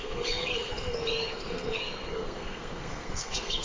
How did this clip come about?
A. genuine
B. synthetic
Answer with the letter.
B